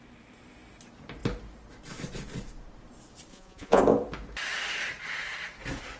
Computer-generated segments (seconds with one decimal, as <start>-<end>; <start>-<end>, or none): 3.3-3.8